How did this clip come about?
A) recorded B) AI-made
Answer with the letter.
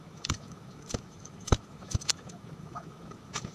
B